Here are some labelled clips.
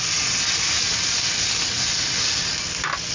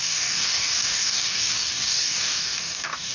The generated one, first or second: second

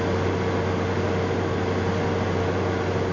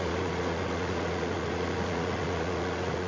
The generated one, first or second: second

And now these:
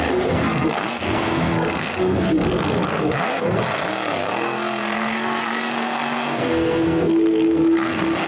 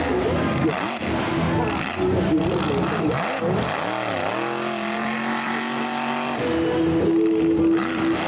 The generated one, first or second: first